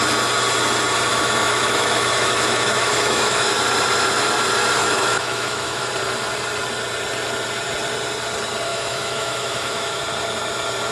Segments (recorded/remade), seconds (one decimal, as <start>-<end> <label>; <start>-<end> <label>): 0.0-1.1 recorded; 1.1-3.5 remade; 3.5-4.8 recorded; 4.8-5.9 remade; 5.9-8.7 recorded; 8.7-10.0 remade; 10.0-10.9 recorded